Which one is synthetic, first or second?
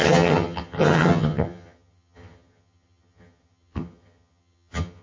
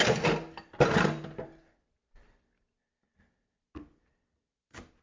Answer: first